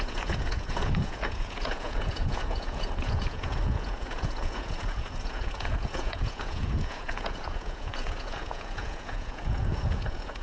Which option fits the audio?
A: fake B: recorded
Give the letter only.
A